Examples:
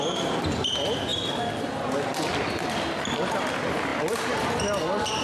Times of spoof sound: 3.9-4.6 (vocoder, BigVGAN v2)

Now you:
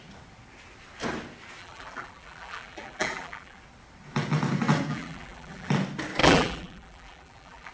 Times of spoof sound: 1.6-3.6 (vocoder, BigVGAN v2); 4.9-5.7; 6.2-7.7

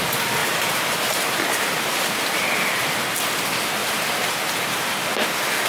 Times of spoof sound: 0.4-2.8 (vocoder, BigVGAN v2); 3.8-5.0